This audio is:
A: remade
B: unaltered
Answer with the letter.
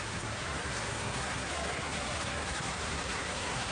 A